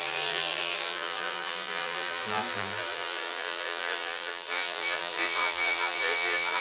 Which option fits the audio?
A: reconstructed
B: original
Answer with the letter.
A